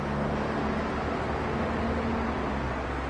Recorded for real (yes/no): yes